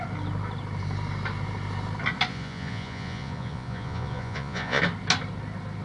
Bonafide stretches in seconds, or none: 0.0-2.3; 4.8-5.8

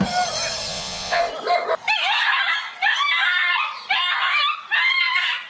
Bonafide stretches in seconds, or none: 0.0-0.7; 1.2-5.5

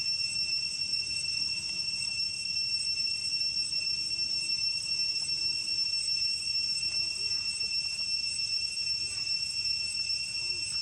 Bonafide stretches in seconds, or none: 0.0-0.9; 2.1-10.8